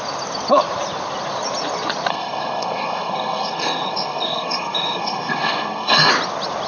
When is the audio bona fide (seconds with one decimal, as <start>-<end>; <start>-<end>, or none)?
0.0-2.1; 6.1-6.7